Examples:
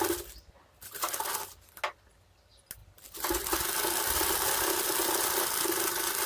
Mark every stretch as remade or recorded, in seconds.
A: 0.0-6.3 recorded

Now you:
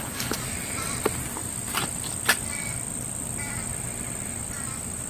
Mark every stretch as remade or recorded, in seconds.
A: 0.0-5.1 recorded

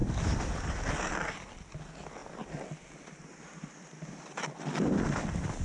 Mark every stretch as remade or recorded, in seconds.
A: 0.0-5.6 recorded

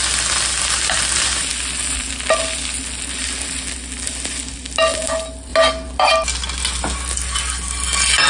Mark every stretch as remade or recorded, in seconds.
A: 0.0-8.3 recorded

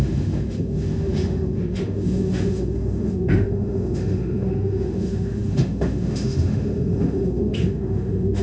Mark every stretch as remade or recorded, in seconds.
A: 0.0-8.4 remade

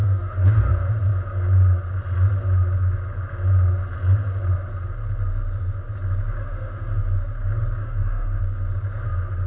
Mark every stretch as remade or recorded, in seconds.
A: 0.0-0.7 remade; 0.7-6.4 recorded; 6.4-7.0 remade; 7.0-7.8 recorded; 7.8-8.4 remade; 8.4-9.5 recorded

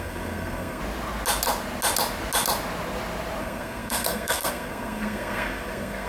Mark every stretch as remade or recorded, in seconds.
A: 0.0-0.8 remade; 0.8-3.4 recorded; 3.4-6.1 remade

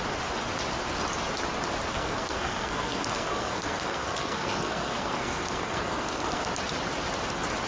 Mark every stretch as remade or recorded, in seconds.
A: 0.0-1.9 recorded; 1.9-6.5 remade; 6.5-7.7 recorded